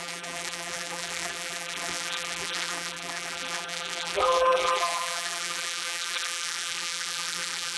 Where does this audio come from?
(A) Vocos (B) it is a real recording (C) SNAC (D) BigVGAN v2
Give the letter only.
D